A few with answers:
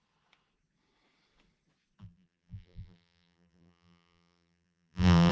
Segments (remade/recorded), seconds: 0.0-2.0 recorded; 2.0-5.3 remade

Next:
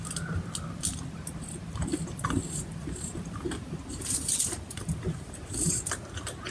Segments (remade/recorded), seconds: 0.0-1.9 recorded; 1.9-5.8 remade; 5.8-6.5 recorded

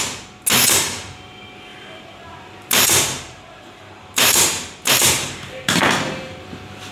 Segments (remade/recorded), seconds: 0.0-1.7 recorded; 1.7-5.8 remade; 5.8-6.9 recorded

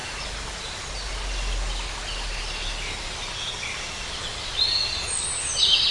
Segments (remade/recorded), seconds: 0.0-5.9 recorded

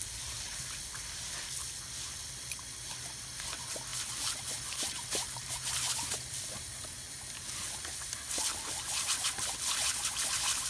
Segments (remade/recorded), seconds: 0.0-10.7 recorded

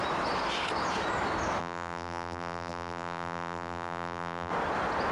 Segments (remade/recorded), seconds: 0.0-1.6 recorded; 1.6-4.5 remade; 4.5-5.1 recorded

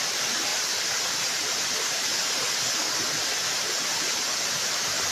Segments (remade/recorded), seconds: 0.0-2.1 remade; 2.1-3.1 recorded; 3.1-5.1 remade

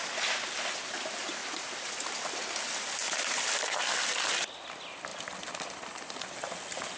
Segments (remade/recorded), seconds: 0.0-1.4 recorded; 1.4-2.4 remade; 2.4-3.0 recorded; 3.0-3.8 remade; 3.8-5.1 recorded; 5.1-6.2 remade; 6.2-7.0 recorded